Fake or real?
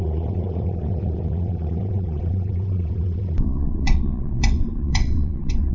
fake